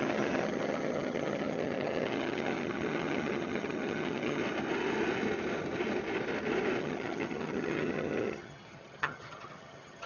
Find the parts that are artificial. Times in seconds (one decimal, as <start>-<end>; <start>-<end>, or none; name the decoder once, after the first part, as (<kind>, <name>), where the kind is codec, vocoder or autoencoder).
0.0-4.4 (vocoder, HiFi-GAN); 6.8-10.1